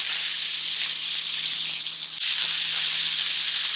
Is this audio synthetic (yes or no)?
no